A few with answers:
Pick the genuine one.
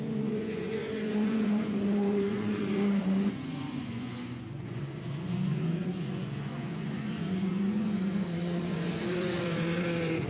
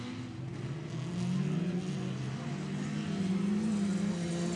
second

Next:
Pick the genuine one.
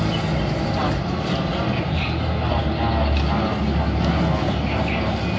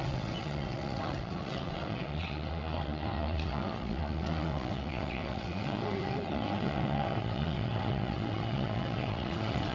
first